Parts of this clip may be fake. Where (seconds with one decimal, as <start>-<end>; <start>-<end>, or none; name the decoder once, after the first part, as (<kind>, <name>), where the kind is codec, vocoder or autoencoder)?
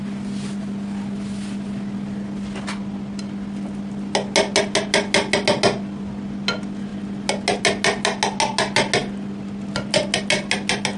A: none